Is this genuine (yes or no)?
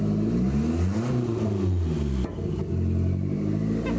yes